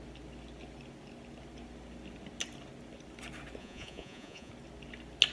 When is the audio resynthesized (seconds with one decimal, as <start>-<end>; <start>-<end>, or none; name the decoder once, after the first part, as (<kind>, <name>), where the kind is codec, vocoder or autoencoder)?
3.6-4.5 (vocoder, Vocos)